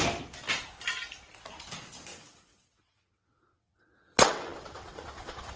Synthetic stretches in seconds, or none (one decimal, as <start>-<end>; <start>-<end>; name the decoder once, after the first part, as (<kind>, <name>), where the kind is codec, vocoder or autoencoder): 2.1-5.6 (vocoder, WaveNeXt)